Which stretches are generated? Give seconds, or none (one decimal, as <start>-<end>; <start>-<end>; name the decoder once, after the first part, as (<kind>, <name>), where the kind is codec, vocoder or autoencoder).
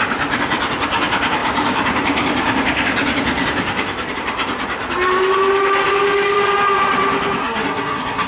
7.4-8.3 (codec, SNAC)